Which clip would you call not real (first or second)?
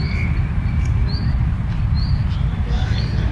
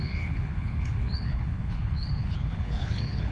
second